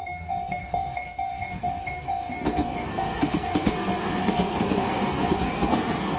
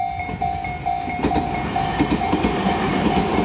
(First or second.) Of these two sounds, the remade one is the first